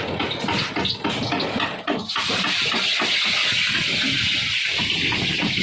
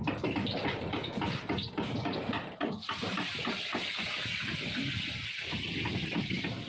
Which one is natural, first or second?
first